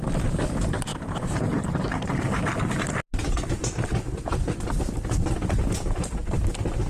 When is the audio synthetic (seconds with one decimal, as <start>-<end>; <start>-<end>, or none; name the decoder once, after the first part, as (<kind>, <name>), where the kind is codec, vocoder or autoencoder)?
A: 0.9-2.2 (vocoder, BigVGAN v2)